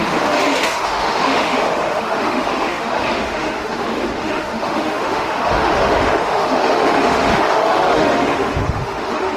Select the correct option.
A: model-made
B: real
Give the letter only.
A